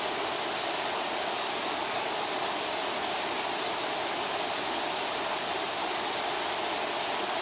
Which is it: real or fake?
real